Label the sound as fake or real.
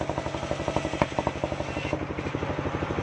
real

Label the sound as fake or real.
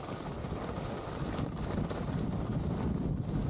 fake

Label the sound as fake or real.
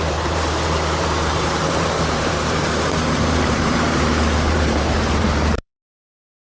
fake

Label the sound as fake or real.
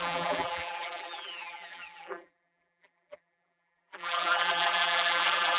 fake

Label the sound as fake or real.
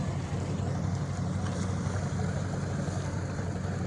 real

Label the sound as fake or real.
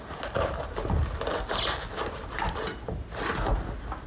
real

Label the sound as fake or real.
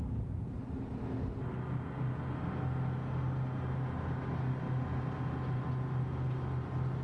real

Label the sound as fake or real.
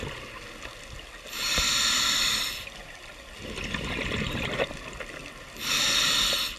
real